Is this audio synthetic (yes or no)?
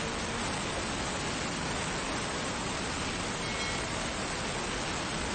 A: no